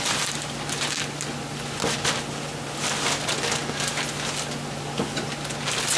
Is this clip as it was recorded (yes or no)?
yes